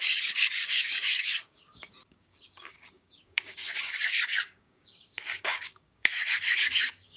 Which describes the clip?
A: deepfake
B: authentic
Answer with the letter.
A